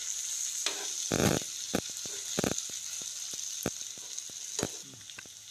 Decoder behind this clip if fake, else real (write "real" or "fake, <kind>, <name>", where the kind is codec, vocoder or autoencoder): real